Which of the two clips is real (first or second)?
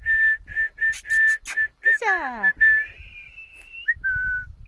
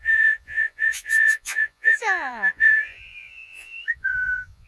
first